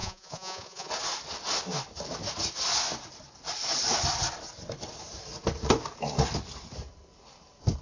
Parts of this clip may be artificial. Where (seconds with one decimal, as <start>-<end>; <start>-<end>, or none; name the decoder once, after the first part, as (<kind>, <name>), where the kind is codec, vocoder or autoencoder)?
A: 0.0-0.9 (vocoder, Vocos)